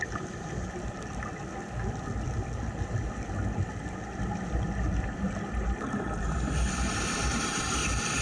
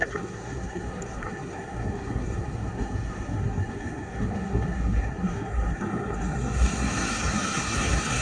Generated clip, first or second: second